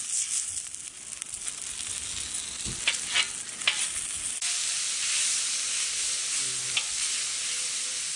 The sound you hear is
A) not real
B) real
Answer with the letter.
B